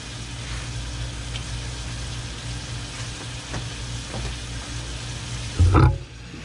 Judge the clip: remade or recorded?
recorded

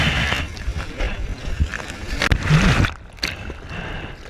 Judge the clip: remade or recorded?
recorded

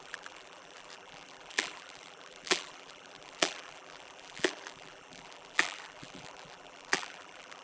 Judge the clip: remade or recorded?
remade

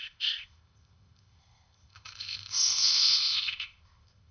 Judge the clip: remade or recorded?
remade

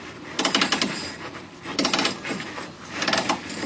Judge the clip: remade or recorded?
recorded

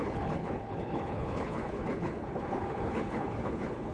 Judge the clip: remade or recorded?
remade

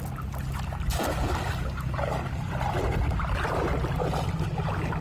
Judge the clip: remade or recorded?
recorded